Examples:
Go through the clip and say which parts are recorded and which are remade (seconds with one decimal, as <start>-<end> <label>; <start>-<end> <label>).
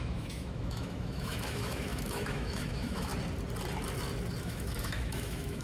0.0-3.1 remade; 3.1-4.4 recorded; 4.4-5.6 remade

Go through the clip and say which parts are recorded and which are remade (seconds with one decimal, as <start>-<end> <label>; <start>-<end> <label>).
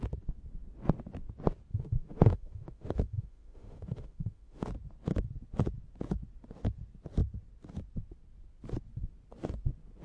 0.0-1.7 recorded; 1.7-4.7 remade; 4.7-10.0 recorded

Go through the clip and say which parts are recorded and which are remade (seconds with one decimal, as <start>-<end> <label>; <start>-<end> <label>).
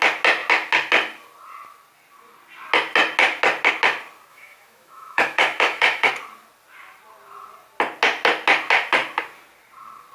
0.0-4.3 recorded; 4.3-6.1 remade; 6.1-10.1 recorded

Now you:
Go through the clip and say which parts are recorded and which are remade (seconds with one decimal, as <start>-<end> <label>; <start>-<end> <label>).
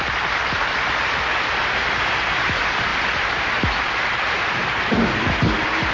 0.0-5.9 recorded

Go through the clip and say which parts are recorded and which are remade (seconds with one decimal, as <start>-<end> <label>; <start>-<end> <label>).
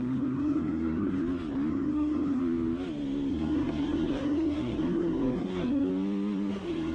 0.0-1.2 remade; 1.2-1.7 recorded; 1.7-2.4 remade; 2.4-3.3 recorded; 3.3-5.9 remade; 5.9-6.5 recorded; 6.5-6.9 remade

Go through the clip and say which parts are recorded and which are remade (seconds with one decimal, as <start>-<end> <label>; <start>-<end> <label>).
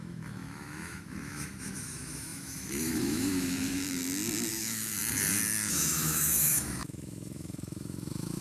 0.0-4.0 remade; 4.0-4.5 recorded; 4.5-5.0 remade; 5.0-5.7 recorded; 5.7-8.4 remade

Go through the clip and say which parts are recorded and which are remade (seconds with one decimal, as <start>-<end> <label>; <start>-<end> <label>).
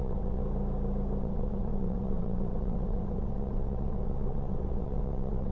0.0-0.4 remade; 0.4-1.2 recorded; 1.2-5.5 remade